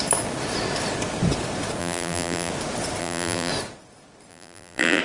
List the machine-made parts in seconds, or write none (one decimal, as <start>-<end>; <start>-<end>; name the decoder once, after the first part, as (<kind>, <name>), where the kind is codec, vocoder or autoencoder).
1.8-2.5 (vocoder, BigVGAN v2); 3.0-3.5; 4.3-5.0